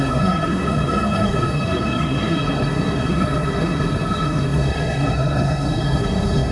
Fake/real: fake